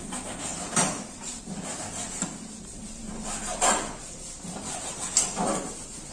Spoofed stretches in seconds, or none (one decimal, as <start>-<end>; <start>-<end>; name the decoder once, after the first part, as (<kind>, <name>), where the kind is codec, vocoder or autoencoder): 0.5-1.4 (vocoder, BigVGAN v2); 2.0-5.1